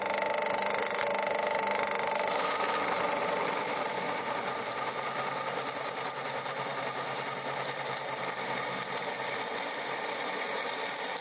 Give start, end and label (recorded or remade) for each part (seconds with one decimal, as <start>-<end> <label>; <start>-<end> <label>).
0.0-11.2 recorded